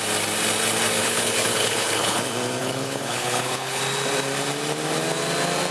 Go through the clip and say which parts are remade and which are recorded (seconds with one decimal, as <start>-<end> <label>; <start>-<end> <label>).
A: 0.0-1.0 recorded; 1.0-2.2 remade; 2.2-2.6 recorded; 2.6-3.8 remade; 3.8-5.7 recorded